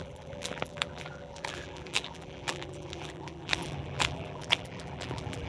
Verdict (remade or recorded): remade